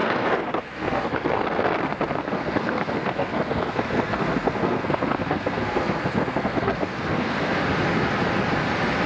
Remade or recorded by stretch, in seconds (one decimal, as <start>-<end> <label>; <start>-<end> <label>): 0.0-7.6 remade; 7.6-9.1 recorded